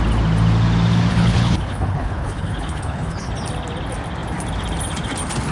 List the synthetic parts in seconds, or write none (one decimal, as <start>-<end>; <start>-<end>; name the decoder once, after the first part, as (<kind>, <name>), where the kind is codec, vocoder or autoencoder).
1.1-3.3 (codec, HILCodec)